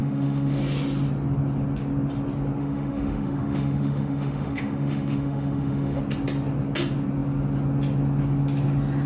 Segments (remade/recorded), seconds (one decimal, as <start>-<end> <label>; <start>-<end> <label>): 0.0-0.6 remade; 0.6-2.6 recorded; 2.6-6.0 remade; 6.0-9.1 recorded